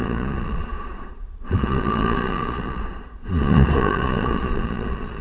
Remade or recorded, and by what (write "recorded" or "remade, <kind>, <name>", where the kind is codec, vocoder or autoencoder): remade, vocoder, Vocos